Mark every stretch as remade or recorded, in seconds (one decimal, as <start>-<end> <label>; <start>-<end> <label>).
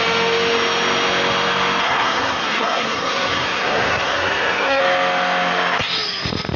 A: 0.0-1.8 recorded; 1.8-4.8 remade; 4.8-6.6 recorded